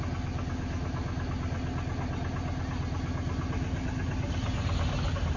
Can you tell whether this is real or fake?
real